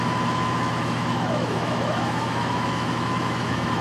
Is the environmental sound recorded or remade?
remade